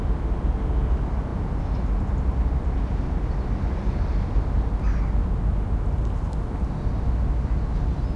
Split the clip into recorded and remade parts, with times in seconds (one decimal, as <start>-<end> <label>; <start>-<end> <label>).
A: 0.0-8.2 recorded